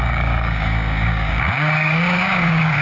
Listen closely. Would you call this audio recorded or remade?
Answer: remade